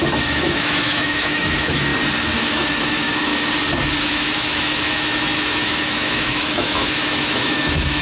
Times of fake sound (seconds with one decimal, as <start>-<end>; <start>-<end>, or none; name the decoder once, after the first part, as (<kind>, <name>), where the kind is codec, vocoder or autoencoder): 0.0-1.9 (autoencoder, DAC-VAE); 2.4-3.3; 4.0-8.0